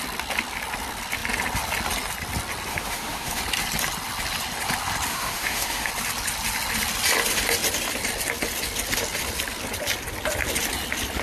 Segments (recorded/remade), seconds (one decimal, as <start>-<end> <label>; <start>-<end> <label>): 0.0-2.7 recorded; 2.7-3.4 remade; 3.4-5.1 recorded; 5.1-5.9 remade; 5.9-11.2 recorded